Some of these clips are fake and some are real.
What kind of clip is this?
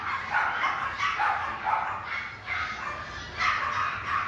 real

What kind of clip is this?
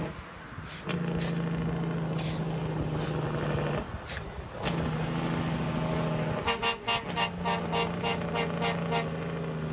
real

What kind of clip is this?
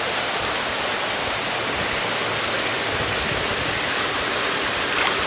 real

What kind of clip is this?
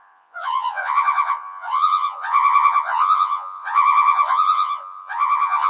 fake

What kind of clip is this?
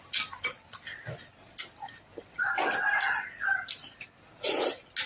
real